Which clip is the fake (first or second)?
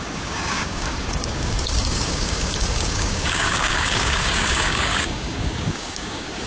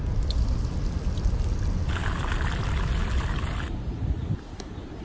first